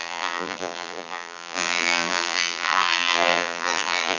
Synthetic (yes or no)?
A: yes